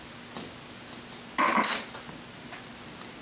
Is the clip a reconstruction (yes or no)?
no